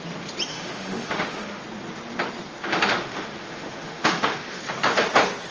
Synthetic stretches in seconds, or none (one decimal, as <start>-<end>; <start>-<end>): 0.5-1.6; 2.7-4.6